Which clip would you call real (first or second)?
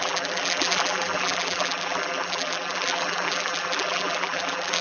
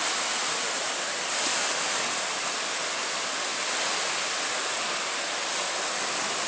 second